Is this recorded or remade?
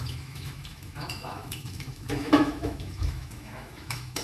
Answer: remade